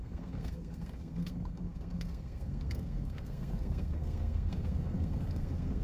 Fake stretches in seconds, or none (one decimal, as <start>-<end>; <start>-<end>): 0.0-5.8